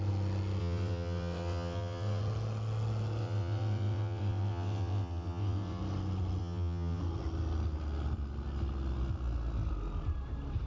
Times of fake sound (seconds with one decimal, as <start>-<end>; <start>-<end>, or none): 0.6-2.2; 3.2-5.8; 6.4-7.0